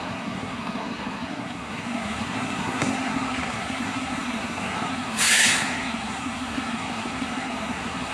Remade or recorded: remade